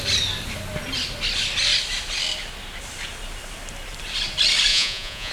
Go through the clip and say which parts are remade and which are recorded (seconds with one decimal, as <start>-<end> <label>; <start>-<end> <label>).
0.0-4.7 recorded; 4.7-5.3 remade